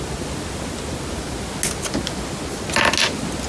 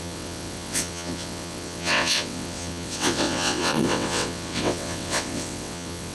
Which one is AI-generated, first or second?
second